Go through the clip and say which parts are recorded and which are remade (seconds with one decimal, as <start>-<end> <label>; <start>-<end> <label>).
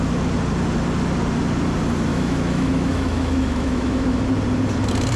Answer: 0.0-2.1 recorded; 2.1-4.2 remade; 4.2-5.2 recorded